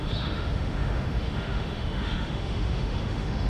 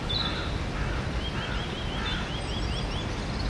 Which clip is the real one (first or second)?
second